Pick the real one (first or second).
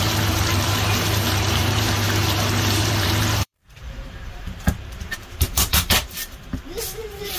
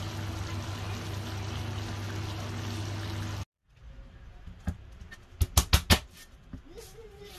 second